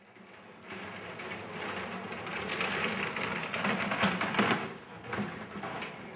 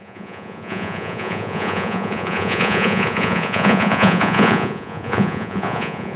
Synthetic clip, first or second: second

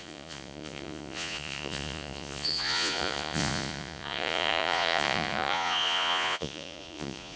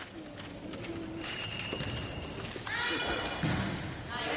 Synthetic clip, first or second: first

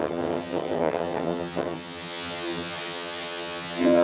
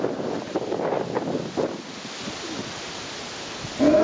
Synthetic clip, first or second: first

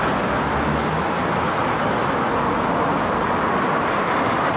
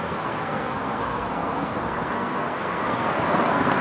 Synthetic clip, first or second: second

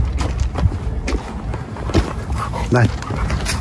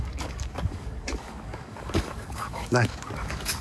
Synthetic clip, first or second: second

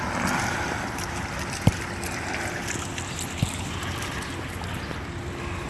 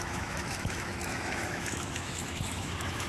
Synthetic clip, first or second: second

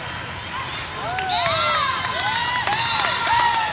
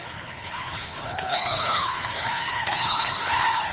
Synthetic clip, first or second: second